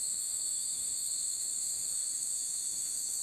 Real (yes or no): no